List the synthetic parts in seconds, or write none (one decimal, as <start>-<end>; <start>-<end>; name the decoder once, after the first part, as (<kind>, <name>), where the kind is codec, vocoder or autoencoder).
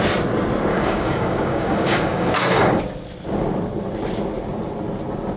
0.7-2.8 (codec, DAC)